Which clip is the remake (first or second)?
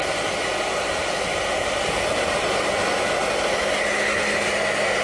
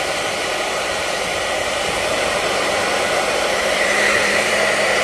second